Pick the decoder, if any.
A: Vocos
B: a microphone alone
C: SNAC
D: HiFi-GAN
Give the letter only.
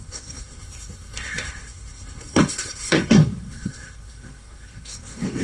C